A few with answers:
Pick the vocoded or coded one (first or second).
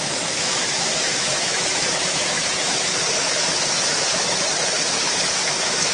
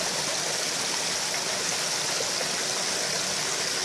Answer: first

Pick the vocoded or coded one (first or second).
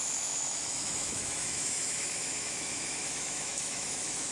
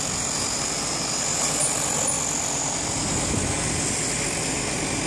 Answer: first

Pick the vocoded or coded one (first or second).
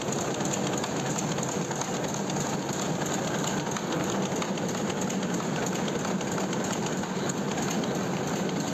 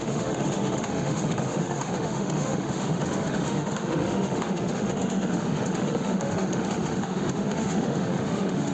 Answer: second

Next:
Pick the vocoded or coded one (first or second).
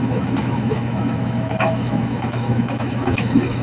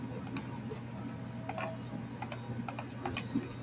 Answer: first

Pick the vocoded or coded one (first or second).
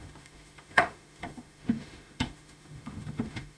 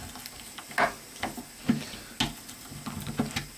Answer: first